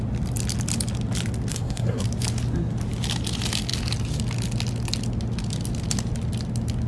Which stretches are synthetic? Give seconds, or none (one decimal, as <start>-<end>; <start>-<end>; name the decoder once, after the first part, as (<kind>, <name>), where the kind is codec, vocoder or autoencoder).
1.5-2.0 (codec, SNAC)